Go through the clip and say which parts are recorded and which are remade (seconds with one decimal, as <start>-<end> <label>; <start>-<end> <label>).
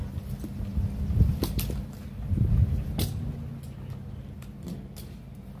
0.0-5.6 recorded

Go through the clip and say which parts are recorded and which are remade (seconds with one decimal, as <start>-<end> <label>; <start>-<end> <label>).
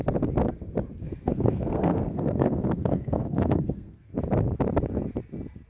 0.0-1.0 recorded; 1.0-4.1 remade; 4.1-5.7 recorded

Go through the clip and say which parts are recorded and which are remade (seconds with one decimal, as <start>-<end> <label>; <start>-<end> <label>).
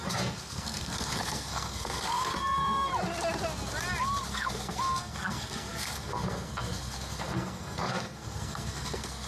0.0-2.9 remade; 2.9-4.3 recorded; 4.3-9.3 remade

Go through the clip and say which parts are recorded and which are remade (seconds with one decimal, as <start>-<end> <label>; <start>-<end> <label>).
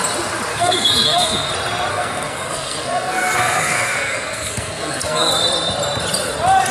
0.0-0.5 recorded; 0.5-1.5 remade; 1.5-1.9 recorded; 1.9-5.3 remade; 5.3-6.7 recorded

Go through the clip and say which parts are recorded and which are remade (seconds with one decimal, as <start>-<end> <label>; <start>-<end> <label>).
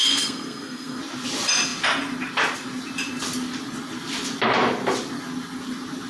0.0-1.0 remade; 1.0-6.1 recorded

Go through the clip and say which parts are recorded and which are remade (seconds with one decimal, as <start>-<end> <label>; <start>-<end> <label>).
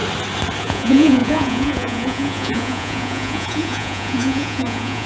0.0-0.6 recorded; 0.6-5.1 remade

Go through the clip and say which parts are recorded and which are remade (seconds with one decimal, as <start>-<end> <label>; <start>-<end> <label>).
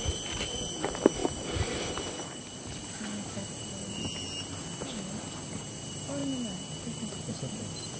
0.0-8.0 recorded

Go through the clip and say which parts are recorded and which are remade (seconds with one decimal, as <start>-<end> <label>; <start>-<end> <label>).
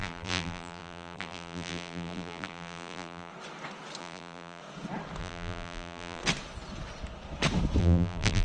0.0-3.3 remade; 3.3-4.0 recorded; 4.0-4.6 remade; 4.6-5.2 recorded; 5.2-6.2 remade; 6.2-7.8 recorded; 7.8-8.4 remade